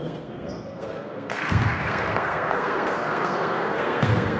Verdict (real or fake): fake